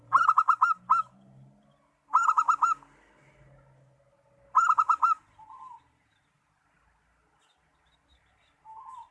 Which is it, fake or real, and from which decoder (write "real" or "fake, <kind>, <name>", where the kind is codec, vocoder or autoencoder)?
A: real